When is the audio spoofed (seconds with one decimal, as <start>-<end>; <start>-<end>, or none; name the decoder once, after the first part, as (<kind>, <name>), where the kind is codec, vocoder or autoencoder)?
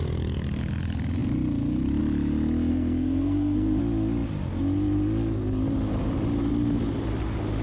2.7-3.8 (codec, SNAC)